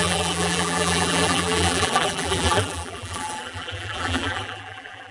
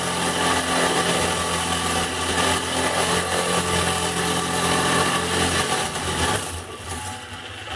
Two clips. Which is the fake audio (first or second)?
first